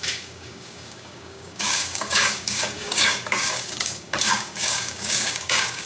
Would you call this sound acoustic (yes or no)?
no